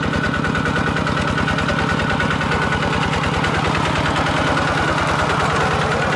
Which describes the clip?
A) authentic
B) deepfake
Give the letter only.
A